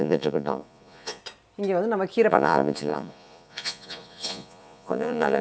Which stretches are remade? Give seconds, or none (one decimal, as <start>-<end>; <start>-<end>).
0.0-1.2; 2.3-5.4

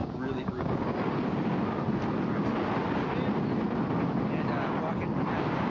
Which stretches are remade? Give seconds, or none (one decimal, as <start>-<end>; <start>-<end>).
0.0-0.8

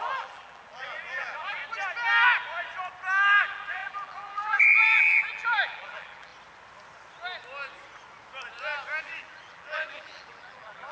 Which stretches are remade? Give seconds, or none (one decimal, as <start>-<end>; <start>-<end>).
0.0-1.6; 3.4-6.3; 9.0-10.9

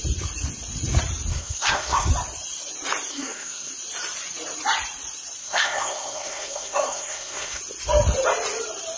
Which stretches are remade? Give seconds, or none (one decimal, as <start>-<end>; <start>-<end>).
1.3-2.1; 3.1-3.7; 5.4-7.6